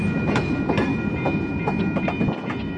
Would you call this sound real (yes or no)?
yes